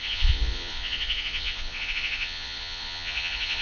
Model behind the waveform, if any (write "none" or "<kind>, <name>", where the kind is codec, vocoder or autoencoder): vocoder, Vocos